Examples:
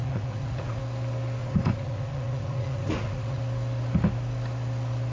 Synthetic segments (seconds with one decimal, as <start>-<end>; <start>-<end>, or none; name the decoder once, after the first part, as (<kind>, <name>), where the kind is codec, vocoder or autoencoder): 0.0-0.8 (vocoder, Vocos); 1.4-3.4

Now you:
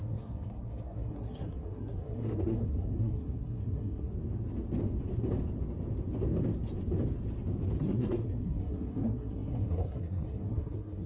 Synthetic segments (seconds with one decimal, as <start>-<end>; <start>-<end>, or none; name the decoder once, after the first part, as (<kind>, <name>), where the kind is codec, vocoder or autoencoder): 0.0-4.1 (codec, SNAC); 7.8-11.1

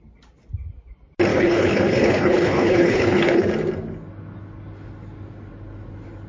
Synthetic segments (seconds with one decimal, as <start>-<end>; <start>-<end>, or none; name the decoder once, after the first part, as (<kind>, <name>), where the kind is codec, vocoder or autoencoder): 1.3-3.5 (codec, HILCodec)

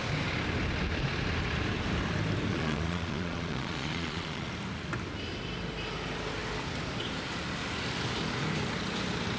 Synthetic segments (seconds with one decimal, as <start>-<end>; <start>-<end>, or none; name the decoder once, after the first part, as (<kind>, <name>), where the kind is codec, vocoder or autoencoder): 2.5-4.5 (vocoder, Vocos)

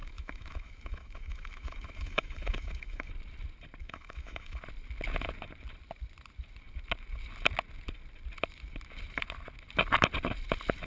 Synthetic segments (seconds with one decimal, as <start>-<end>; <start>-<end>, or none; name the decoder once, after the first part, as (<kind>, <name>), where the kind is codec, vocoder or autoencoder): 0.0-3.1 (autoencoder, DAC-VAE); 3.8-4.6

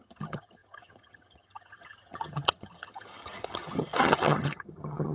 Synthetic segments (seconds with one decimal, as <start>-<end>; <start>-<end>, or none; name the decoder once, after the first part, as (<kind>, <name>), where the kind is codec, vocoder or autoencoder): 0.0-5.1 (vocoder, HiFi-GAN)